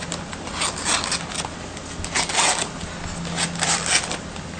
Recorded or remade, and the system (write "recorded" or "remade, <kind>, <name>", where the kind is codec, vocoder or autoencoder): recorded